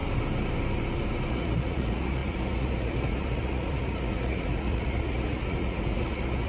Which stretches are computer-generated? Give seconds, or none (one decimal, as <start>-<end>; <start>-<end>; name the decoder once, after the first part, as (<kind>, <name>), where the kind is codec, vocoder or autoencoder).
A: 1.3-6.5 (vocoder, Vocos)